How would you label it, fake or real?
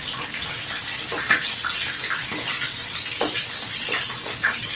real